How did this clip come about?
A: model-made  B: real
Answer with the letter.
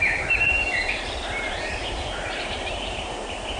A